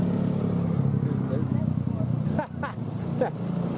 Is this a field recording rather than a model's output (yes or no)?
yes